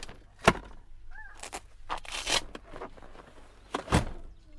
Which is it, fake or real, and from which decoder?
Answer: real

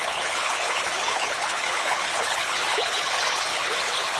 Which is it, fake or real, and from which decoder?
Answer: fake, codec, HILCodec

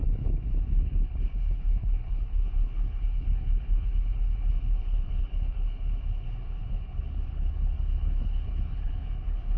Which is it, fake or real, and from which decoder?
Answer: fake, codec, HILCodec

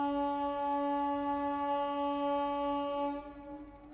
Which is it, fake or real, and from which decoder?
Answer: real